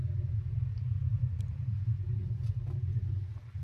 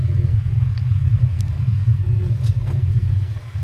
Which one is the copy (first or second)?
second